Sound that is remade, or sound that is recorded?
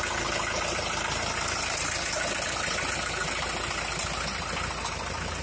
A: recorded